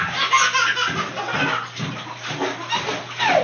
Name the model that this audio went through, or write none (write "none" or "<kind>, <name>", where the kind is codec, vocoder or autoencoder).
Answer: none